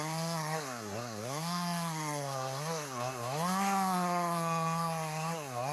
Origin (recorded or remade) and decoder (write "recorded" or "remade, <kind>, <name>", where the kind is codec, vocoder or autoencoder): remade, codec, SNAC